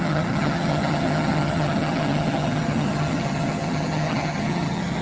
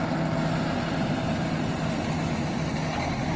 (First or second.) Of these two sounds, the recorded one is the second